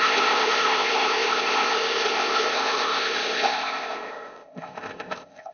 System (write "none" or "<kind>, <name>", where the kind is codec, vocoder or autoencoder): codec, ZipCodec